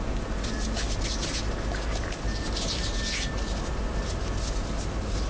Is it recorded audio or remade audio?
recorded